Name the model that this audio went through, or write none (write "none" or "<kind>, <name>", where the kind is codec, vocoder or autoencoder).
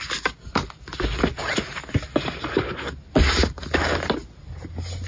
none